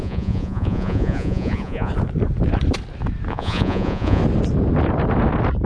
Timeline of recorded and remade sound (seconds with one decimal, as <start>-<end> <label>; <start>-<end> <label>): 0.0-1.9 remade; 1.9-3.3 recorded; 3.3-4.2 remade; 4.2-5.7 recorded